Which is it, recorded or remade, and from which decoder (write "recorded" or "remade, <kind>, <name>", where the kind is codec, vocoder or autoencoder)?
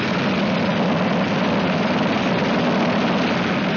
recorded